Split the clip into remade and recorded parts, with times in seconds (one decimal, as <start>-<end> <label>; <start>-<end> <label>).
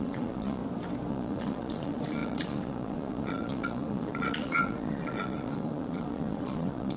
0.0-0.6 remade; 0.6-1.1 recorded; 1.1-7.0 remade